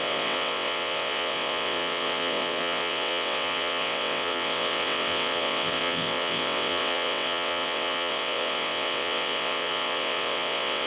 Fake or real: fake